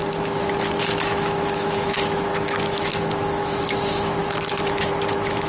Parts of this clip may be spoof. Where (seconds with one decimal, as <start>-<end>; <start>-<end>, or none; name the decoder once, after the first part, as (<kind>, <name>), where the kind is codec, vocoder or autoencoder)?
0.8-5.5 (autoencoder, DAC-VAE)